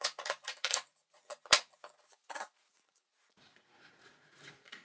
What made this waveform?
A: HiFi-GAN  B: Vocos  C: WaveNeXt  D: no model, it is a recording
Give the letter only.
B